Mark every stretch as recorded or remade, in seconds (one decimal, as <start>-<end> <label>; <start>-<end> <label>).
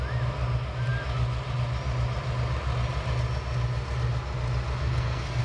0.0-4.8 recorded; 4.8-5.4 remade